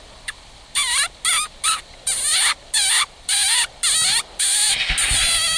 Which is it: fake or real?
real